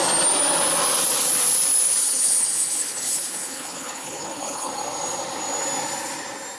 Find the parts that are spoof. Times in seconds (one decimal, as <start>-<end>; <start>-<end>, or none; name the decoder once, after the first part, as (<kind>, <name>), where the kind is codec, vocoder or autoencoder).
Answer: 2.0-4.7 (codec, HILCodec)